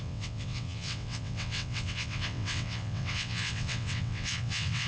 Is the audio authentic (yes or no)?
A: no